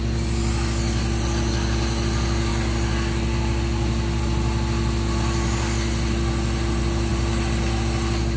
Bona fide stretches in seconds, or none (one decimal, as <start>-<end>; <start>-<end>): 0.0-8.4

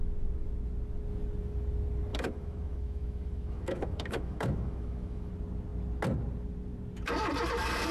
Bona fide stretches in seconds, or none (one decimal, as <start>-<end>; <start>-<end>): 0.0-2.1; 5.3-7.9